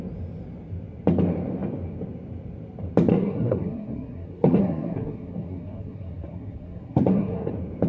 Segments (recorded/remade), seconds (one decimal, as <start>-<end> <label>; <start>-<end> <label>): 0.0-3.1 recorded; 3.1-7.5 remade; 7.5-7.9 recorded